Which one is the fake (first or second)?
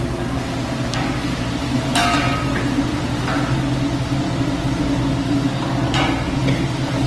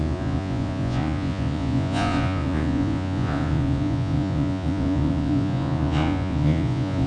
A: second